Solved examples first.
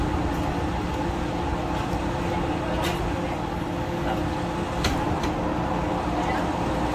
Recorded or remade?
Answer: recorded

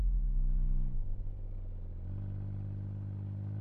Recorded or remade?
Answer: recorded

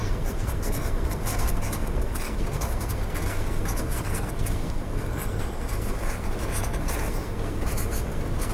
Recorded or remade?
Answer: remade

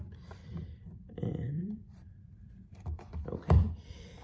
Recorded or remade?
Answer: remade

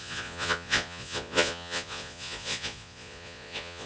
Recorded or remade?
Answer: remade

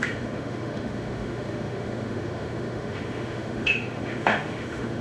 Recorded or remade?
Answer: remade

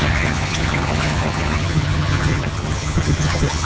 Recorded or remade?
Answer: remade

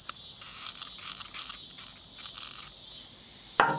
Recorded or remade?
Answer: recorded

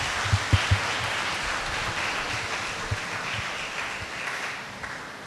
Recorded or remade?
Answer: recorded